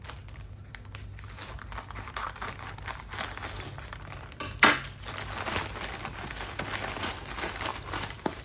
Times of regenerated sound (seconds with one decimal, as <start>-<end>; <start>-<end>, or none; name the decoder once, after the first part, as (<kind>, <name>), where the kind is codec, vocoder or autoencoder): 7.7-8.4 (vocoder, BigVGAN v2)